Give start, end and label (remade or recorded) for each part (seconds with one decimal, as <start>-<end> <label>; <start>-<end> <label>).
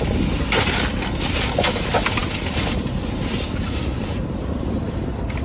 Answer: 0.0-5.4 recorded